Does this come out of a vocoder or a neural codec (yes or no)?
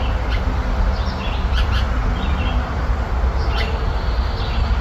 no